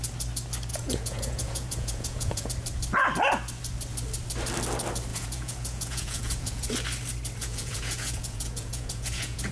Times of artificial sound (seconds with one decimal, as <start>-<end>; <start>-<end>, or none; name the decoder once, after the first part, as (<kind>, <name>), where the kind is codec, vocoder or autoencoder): 0.7-2.5 (vocoder, Vocos); 5.1-6.7; 7.4-9.5